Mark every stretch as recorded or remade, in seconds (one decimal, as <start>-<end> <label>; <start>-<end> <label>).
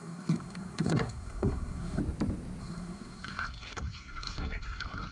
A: 0.0-2.0 remade; 2.0-2.6 recorded; 2.6-5.1 remade